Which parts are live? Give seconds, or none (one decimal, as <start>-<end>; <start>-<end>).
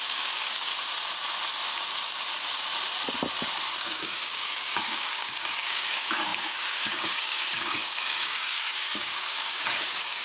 0.7-3.7